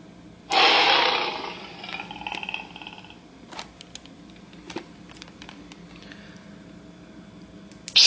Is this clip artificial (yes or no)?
no